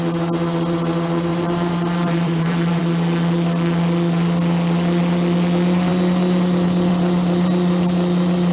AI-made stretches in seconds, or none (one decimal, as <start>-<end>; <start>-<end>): 1.3-2.8